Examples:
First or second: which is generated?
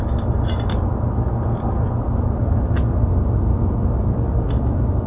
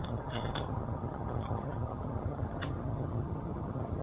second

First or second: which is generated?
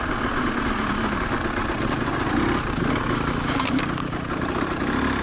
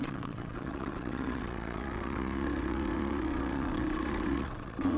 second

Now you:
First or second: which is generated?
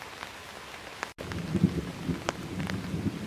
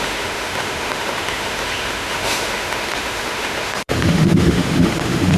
second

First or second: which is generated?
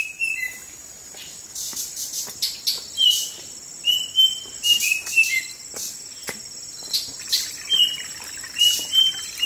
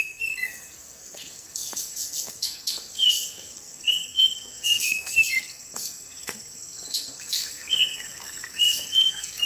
second